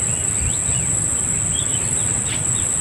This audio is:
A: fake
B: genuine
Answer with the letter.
B